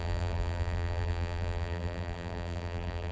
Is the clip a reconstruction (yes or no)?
yes